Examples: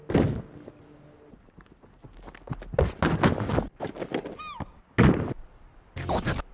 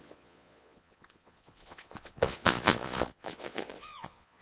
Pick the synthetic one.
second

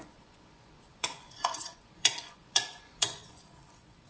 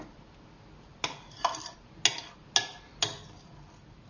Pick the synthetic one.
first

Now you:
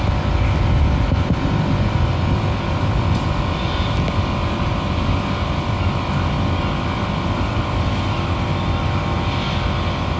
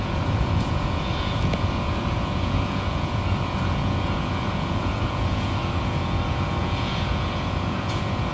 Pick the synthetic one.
second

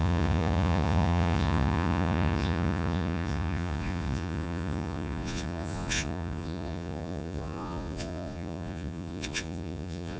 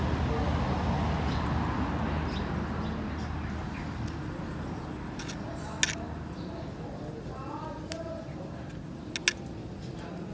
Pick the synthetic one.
first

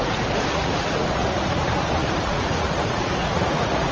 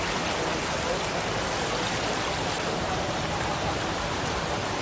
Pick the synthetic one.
first